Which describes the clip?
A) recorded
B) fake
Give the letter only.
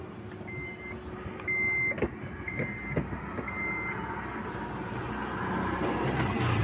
A